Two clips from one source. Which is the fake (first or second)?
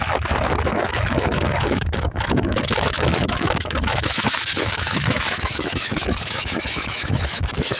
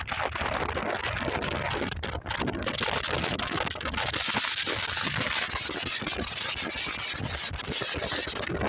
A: first